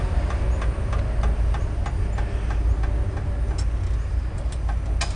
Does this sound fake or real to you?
real